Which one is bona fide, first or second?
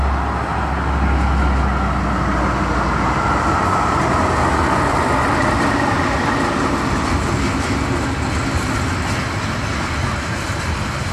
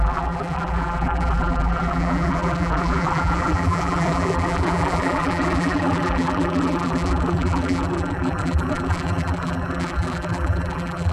first